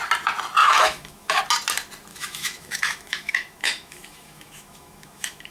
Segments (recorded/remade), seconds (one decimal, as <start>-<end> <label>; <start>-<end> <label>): 0.0-0.6 recorded; 0.6-1.4 remade; 1.4-2.1 recorded; 2.1-5.5 remade